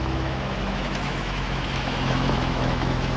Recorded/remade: remade